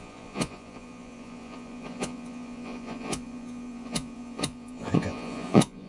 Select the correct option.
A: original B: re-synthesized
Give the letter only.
B